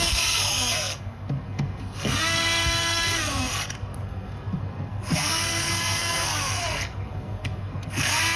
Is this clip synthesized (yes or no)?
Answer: yes